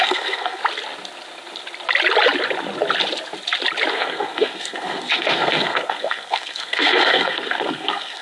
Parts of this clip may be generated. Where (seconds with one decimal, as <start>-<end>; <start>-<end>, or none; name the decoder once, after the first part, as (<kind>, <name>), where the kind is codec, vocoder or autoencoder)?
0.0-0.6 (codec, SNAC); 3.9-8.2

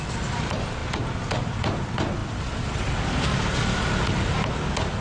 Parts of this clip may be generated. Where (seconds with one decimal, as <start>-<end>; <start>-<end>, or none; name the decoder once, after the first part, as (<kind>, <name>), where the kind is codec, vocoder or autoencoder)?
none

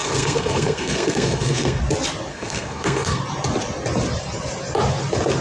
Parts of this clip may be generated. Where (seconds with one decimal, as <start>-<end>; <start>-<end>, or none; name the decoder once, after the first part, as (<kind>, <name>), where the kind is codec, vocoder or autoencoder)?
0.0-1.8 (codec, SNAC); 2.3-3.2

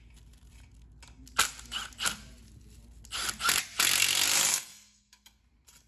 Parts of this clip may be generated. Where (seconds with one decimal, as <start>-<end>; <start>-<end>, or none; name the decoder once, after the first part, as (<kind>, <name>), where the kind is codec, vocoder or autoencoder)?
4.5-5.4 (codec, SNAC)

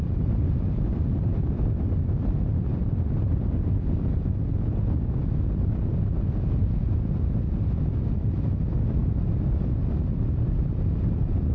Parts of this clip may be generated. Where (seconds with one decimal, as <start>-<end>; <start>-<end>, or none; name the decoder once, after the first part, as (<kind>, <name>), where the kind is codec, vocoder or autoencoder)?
none